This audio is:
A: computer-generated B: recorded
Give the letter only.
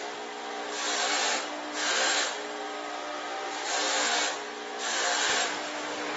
B